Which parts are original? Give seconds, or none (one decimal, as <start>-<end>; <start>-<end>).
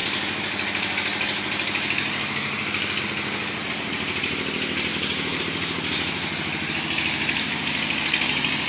0.0-8.7